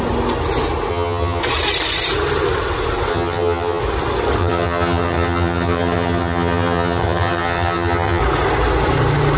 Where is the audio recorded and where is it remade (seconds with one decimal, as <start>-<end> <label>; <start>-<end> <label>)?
0.0-0.9 recorded; 0.9-1.4 remade; 1.4-3.1 recorded; 3.1-3.8 remade; 3.8-4.4 recorded; 4.4-8.2 remade; 8.2-9.4 recorded